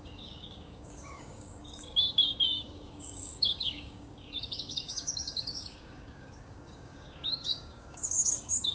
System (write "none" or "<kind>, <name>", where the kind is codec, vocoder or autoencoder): codec, DAC